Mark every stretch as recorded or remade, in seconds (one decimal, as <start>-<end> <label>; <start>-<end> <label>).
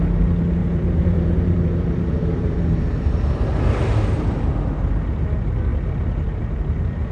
0.0-0.6 recorded; 0.6-2.9 remade; 2.9-7.1 recorded